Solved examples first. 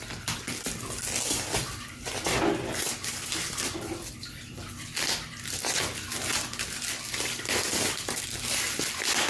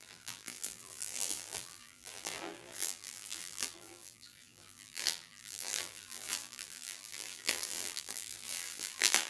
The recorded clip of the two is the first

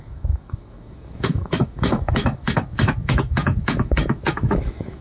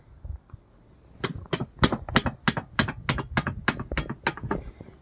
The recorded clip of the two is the second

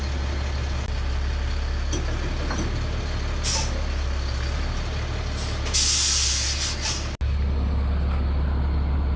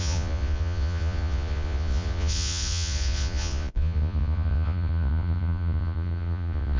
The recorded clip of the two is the first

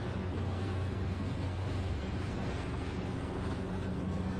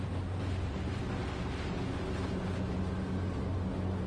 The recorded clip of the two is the second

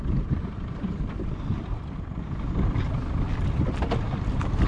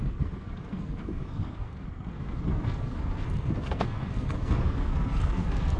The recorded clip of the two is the first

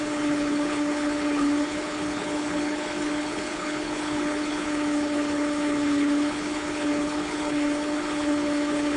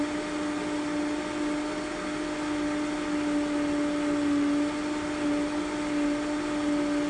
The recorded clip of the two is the second